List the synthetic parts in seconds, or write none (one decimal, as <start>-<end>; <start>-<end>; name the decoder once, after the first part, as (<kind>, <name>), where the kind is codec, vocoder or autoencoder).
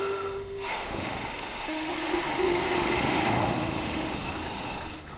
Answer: 0.0-5.2 (autoencoder, DAC-VAE)